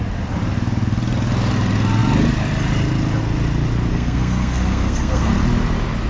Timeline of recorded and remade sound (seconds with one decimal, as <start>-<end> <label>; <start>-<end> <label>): 0.0-3.9 recorded; 3.9-5.3 remade; 5.3-6.1 recorded

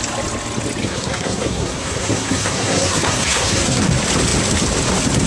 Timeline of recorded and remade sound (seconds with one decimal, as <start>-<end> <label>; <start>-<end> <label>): 0.0-0.8 recorded; 0.8-3.8 remade; 3.8-5.3 recorded

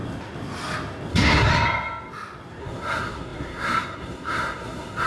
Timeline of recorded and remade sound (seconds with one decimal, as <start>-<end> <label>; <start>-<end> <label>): 0.0-1.1 recorded; 1.1-1.5 remade; 1.5-2.6 recorded; 2.6-5.1 remade

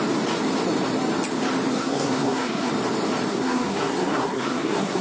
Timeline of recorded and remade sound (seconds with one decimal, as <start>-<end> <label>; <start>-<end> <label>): 0.0-1.7 recorded; 1.7-2.7 remade; 2.7-3.3 recorded; 3.3-5.0 remade

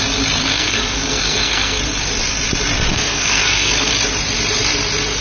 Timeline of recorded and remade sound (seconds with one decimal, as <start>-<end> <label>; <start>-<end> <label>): 0.0-0.4 recorded; 0.4-1.8 remade; 1.8-2.9 recorded; 2.9-3.9 remade; 3.9-5.2 recorded

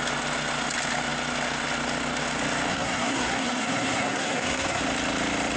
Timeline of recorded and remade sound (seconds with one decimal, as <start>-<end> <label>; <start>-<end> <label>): 0.0-2.7 recorded; 2.7-4.8 remade; 4.8-5.6 recorded

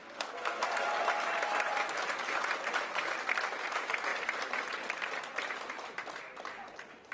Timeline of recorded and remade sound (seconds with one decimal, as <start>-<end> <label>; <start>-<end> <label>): 0.0-0.6 remade; 0.6-7.1 recorded

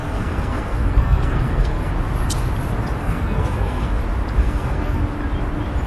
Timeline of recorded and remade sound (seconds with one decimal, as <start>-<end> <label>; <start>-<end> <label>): 0.0-1.9 remade; 1.9-3.0 recorded; 3.0-4.0 remade; 4.0-4.4 recorded; 4.4-5.0 remade; 5.0-5.9 recorded